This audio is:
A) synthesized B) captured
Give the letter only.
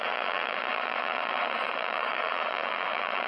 A